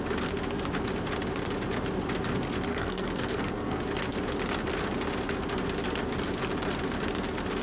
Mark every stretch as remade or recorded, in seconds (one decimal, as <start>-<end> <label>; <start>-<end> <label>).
0.0-2.7 recorded; 2.7-3.8 remade; 3.8-7.6 recorded